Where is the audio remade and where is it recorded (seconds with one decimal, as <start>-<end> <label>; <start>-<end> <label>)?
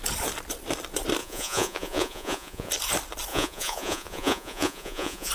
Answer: 0.0-1.2 recorded; 1.2-2.7 remade; 2.7-3.3 recorded; 3.3-5.3 remade